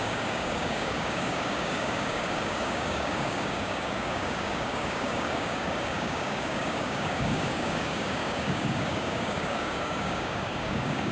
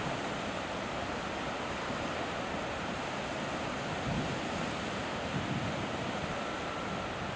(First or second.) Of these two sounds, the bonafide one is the second